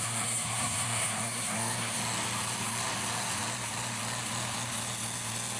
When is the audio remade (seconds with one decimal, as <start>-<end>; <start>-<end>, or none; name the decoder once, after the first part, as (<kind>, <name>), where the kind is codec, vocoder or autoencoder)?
0.0-2.0 (codec, SNAC)